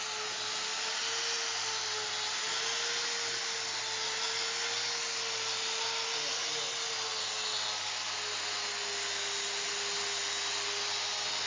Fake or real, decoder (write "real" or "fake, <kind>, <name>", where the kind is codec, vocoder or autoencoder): real